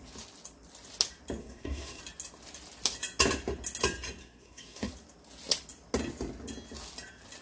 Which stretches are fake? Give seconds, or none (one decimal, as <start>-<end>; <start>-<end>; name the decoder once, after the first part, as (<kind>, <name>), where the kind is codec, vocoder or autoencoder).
1.4-2.0 (codec, SNAC); 4.2-4.9